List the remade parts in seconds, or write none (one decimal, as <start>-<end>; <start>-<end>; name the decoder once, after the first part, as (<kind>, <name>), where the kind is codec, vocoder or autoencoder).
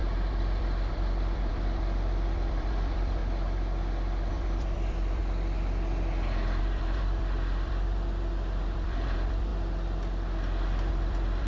0.0-3.2 (vocoder, BigVGAN v2); 4.3-5.2; 6.6-9.5; 10.9-11.5